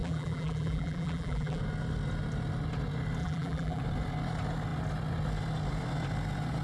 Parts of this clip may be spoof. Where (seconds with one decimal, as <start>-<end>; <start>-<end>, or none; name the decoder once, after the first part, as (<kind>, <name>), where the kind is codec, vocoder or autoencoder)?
0.0-1.6 (vocoder, BigVGAN v2); 3.2-3.8